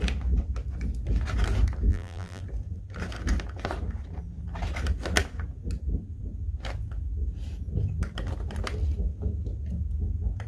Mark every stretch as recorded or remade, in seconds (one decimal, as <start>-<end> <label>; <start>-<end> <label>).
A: 0.0-1.9 recorded; 1.9-2.4 remade; 2.4-10.5 recorded